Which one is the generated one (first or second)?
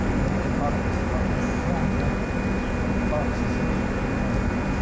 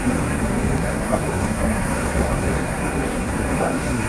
second